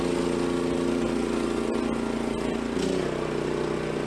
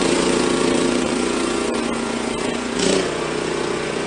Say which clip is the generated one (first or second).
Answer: second